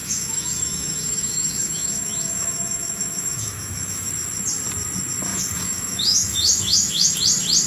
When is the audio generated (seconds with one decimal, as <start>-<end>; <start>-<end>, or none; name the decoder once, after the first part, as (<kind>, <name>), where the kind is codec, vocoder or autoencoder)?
0.0-4.1 (autoencoder, DAC-VAE); 5.3-7.1